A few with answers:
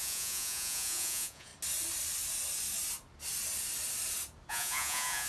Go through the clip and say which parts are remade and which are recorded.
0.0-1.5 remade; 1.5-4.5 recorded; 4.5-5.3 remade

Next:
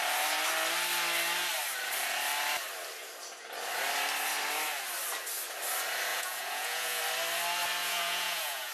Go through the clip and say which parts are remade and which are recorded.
0.0-6.1 recorded; 6.1-7.0 remade; 7.0-7.8 recorded; 7.8-8.7 remade

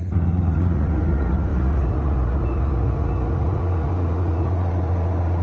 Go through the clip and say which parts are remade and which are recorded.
0.0-5.4 remade

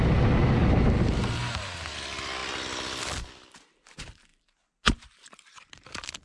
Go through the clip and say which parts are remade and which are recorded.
0.0-6.2 recorded

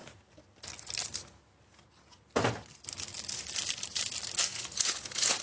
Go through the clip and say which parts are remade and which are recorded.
0.0-4.5 recorded; 4.5-5.4 remade

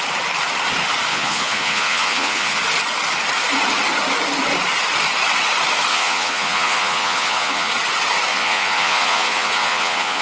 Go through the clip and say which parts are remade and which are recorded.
0.0-1.1 recorded; 1.1-2.6 remade; 2.6-5.9 recorded; 5.9-7.7 remade; 7.7-8.3 recorded; 8.3-10.2 remade